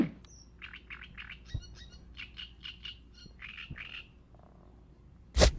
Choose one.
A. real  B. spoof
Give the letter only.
A